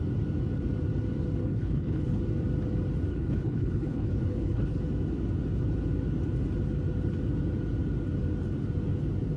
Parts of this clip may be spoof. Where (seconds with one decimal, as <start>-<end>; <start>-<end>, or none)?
1.4-2.2; 3.1-4.8